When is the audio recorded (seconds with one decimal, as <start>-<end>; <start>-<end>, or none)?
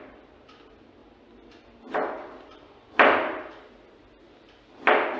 0.0-1.0; 3.7-5.2